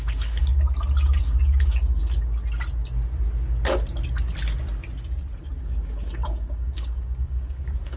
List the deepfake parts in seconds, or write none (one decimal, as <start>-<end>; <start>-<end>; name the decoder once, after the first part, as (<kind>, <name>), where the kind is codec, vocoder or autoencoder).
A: 0.0-0.5 (codec, DAC); 1.2-2.0; 5.6-8.0